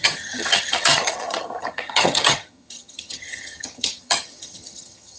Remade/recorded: remade